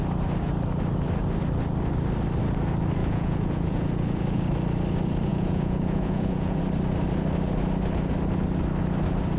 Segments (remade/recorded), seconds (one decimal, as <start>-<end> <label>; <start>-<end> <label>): 0.0-3.0 recorded; 3.0-4.4 remade; 4.4-5.3 recorded; 5.3-6.6 remade; 6.6-9.4 recorded